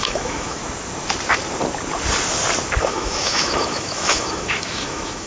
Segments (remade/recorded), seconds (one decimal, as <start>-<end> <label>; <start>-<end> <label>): 0.0-0.6 remade; 0.6-2.8 recorded; 2.8-5.3 remade